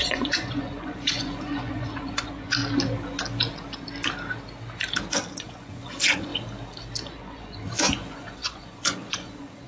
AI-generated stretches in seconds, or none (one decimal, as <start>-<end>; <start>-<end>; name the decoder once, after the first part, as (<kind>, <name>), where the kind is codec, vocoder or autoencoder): 0.0-2.6 (vocoder, Vocos); 5.3-6.3; 7.0-9.7